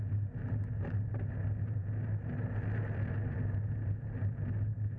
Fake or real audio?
real